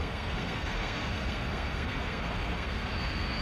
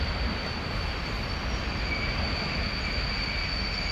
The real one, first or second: second